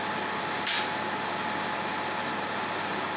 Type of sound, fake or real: real